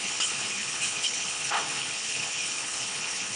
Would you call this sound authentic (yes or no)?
no